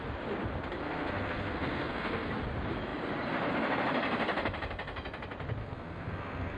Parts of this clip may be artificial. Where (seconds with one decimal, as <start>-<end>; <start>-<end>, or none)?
0.8-2.3; 5.6-6.6